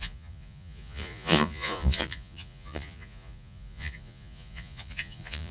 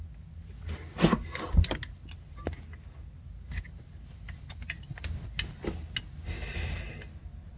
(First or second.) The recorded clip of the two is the second